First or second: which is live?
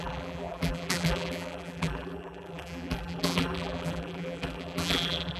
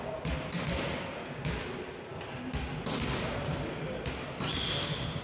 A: second